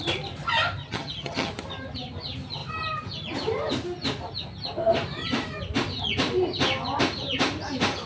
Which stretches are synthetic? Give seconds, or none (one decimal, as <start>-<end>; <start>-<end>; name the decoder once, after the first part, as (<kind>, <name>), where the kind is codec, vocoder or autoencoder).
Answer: 0.8-1.5 (vocoder, HiFi-GAN)